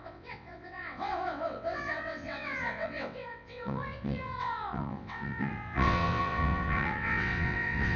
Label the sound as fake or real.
fake